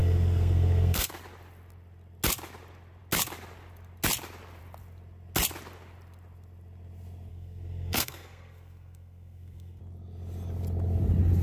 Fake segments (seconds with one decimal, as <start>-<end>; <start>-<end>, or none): 0.0-1.1; 7.3-9.8